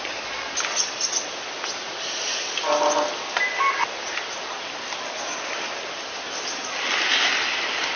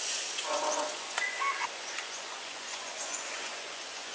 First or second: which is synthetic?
second